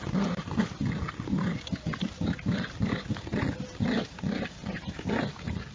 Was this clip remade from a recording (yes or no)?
no